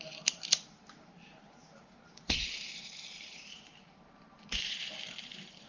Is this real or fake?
fake